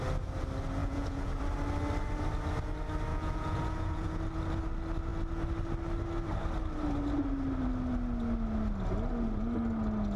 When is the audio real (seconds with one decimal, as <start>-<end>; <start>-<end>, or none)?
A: 0.0-0.8; 1.4-3.1; 4.2-10.2